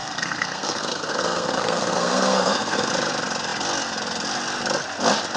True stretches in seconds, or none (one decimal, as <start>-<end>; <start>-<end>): 2.9-5.4